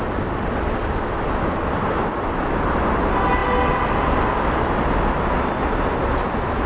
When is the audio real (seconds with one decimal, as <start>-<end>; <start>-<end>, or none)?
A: 0.0-6.7